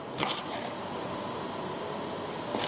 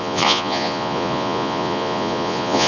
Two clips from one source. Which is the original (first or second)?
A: first